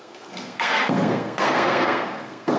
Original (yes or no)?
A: no